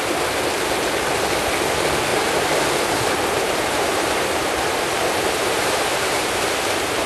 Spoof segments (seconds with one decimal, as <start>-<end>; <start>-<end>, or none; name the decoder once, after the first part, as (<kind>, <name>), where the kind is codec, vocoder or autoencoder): 2.1-6.4 (vocoder, BigVGAN v2)